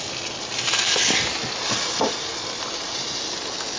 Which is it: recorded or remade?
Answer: recorded